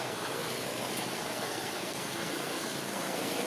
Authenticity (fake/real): fake